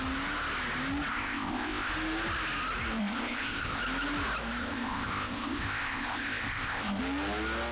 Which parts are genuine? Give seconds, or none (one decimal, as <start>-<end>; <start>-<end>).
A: 0.0-1.1; 1.9-3.0; 3.8-4.6; 7.0-7.7